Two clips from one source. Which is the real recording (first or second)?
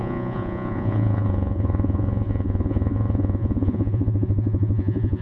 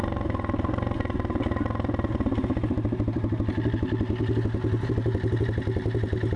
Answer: second